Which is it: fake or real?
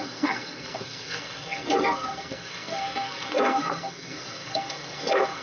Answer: fake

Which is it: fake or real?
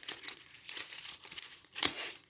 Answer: fake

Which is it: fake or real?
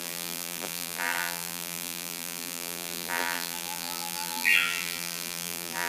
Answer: fake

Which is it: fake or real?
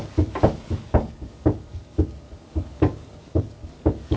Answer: fake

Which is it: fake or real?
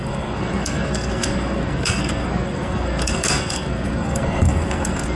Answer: fake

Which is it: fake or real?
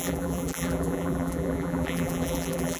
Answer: fake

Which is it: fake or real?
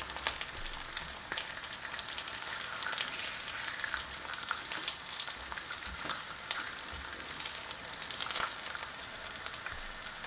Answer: real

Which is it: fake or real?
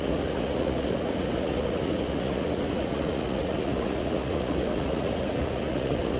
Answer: fake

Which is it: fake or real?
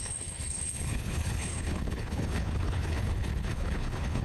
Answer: fake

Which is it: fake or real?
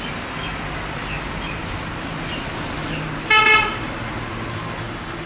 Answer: real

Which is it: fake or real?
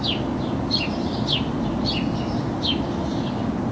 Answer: real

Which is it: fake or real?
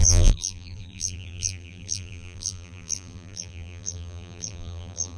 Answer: fake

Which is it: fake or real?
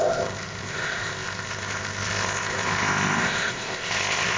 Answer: fake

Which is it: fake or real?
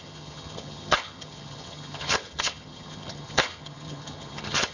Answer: fake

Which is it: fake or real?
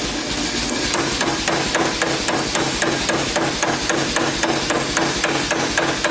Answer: real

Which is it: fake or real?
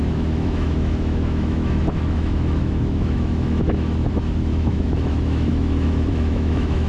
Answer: fake